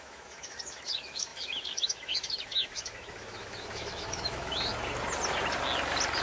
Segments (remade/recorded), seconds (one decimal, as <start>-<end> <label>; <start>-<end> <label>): 0.0-4.7 remade; 4.7-6.2 recorded